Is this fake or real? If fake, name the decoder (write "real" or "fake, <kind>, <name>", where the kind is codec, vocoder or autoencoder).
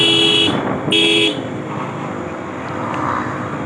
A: real